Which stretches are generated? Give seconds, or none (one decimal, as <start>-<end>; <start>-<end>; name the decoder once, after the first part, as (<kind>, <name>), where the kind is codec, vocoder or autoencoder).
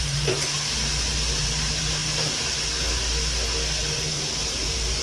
0.0-2.0 (vocoder, BigVGAN v2); 3.8-5.0